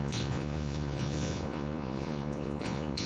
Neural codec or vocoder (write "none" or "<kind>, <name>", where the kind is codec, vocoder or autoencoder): vocoder, Vocos